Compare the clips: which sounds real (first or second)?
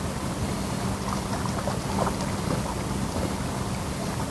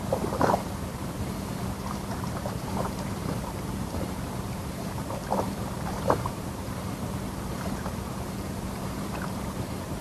first